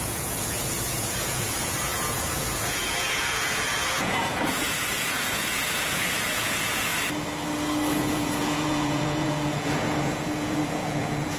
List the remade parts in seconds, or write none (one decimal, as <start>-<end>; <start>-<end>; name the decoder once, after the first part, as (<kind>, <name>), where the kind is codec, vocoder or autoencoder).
0.0-6.9 (vocoder, Vocos); 7.9-11.4

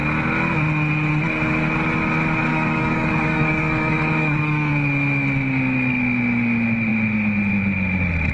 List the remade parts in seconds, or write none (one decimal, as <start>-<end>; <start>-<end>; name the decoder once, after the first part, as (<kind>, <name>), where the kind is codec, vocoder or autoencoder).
2.5-4.7 (codec, DAC)